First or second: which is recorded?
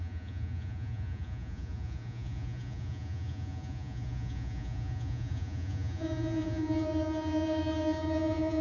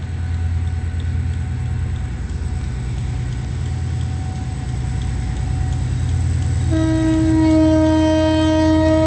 second